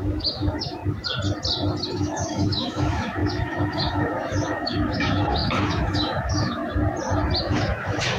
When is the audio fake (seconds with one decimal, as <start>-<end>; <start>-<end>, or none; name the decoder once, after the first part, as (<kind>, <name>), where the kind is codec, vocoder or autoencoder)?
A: 0.0-0.8 (autoencoder, DAC-VAE); 1.9-6.6; 7.4-8.2